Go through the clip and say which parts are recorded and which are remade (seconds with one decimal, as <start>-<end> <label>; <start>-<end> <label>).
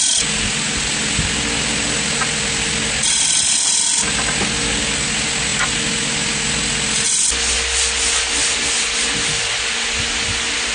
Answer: 0.0-10.7 recorded